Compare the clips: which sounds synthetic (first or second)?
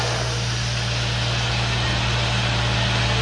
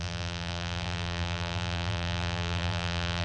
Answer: second